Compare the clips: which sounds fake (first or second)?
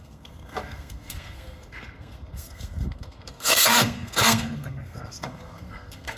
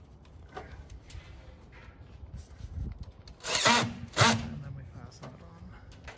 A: first